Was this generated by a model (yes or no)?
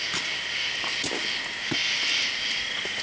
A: no